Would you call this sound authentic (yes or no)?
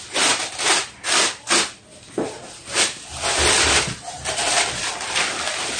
yes